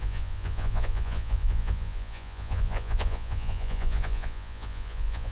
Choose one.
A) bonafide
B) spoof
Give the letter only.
B